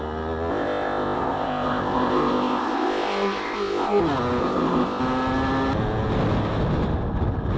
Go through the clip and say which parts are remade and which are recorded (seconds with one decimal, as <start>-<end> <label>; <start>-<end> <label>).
0.0-0.5 recorded; 0.5-4.0 remade; 4.0-4.4 recorded; 4.4-5.0 remade; 5.0-7.6 recorded